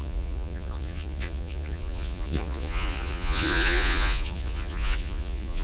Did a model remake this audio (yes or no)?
yes